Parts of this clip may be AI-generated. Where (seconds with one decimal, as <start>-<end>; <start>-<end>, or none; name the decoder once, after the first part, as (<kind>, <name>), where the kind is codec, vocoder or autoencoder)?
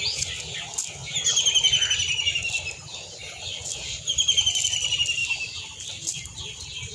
none